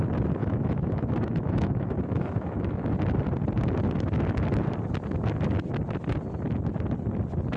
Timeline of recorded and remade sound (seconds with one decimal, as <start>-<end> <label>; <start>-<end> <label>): 0.0-0.4 recorded; 0.4-2.9 remade; 2.9-7.6 recorded